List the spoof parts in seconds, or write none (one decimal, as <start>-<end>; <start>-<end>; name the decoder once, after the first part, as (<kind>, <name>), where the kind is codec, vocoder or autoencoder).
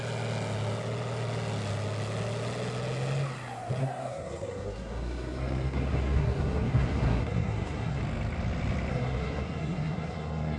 3.8-8.0 (codec, SNAC); 8.9-10.6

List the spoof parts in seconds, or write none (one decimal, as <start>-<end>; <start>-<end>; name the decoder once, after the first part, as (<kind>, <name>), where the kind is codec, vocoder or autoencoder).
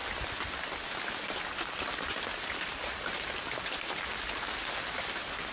none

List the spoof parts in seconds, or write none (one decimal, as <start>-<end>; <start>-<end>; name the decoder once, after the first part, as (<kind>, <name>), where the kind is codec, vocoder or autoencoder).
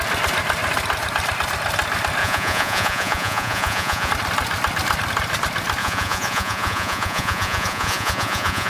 2.2-4.1 (vocoder, Vocos); 5.8-8.7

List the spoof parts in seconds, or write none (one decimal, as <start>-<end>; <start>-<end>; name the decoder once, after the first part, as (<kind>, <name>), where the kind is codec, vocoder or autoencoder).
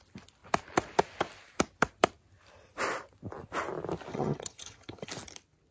4.1-5.1 (vocoder, HiFi-GAN)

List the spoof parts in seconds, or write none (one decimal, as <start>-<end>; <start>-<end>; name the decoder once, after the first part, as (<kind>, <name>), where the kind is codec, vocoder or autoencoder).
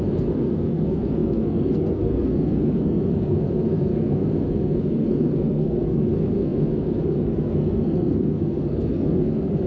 0.0-9.7 (codec, SNAC)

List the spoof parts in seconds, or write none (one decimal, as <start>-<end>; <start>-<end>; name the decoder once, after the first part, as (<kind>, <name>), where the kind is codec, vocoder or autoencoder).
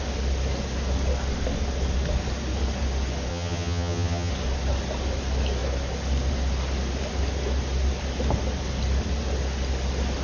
3.3-4.3 (vocoder, HiFi-GAN)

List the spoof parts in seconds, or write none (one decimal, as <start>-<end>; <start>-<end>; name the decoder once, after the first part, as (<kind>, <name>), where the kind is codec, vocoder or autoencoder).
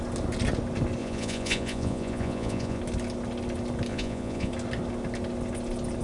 1.0-2.8 (vocoder, Vocos); 3.9-4.5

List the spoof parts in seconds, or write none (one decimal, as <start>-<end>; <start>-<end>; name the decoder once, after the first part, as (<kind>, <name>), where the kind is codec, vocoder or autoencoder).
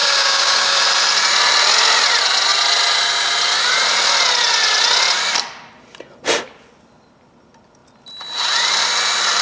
0.0-0.8 (codec, DAC)